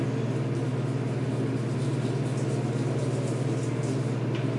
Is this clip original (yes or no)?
yes